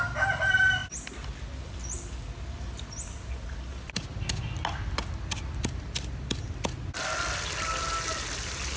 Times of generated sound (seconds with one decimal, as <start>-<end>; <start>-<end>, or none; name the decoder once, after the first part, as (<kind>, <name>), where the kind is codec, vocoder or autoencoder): none